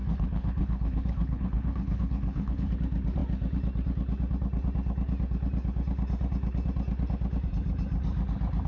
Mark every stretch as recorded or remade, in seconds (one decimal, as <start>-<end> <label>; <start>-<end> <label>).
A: 0.0-2.7 remade; 2.7-8.7 recorded